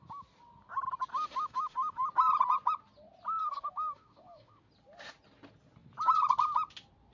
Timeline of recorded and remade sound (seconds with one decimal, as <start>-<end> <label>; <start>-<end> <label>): 0.0-1.1 recorded; 1.1-2.0 remade; 2.0-3.4 recorded; 3.4-4.7 remade; 4.7-7.1 recorded